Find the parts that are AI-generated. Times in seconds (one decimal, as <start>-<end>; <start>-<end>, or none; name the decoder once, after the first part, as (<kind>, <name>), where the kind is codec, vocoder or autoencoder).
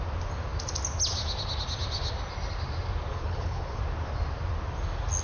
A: 3.1-3.8 (codec, HILCodec)